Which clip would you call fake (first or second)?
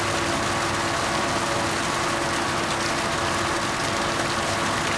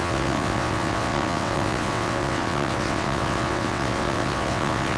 second